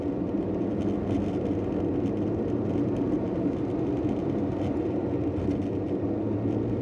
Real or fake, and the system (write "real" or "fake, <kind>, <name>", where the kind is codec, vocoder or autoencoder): real